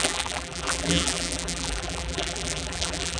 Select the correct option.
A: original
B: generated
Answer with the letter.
B